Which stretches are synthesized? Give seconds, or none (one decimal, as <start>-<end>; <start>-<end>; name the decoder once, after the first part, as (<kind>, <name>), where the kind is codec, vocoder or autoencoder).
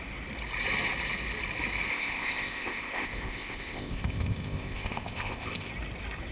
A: 1.9-5.7 (codec, ZipCodec)